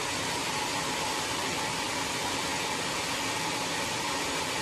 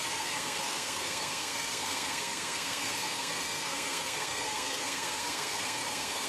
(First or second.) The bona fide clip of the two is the first